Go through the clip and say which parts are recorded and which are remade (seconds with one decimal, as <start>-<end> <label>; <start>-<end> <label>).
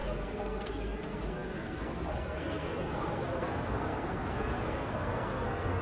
0.0-5.8 remade